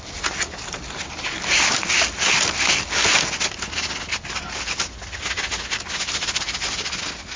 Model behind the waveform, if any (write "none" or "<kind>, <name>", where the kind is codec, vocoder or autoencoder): none